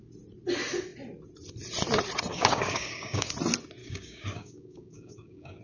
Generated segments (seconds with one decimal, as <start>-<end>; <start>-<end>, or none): 2.3-3.3; 3.8-5.6